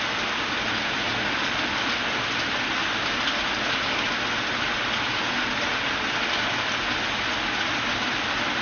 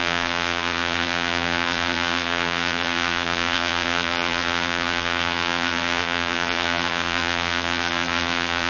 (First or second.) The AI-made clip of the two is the second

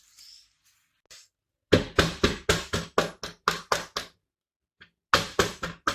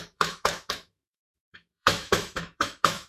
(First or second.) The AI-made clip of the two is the second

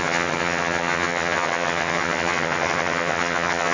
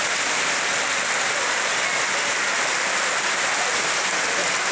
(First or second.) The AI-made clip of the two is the first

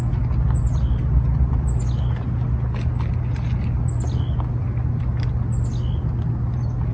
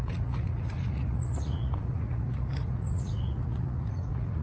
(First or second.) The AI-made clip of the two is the second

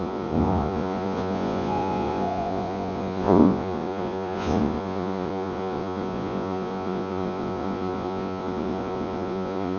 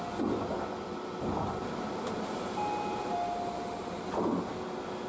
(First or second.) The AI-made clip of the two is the first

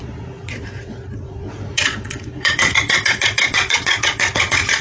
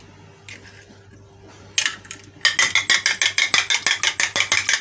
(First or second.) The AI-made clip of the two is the first